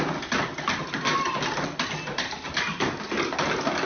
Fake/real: real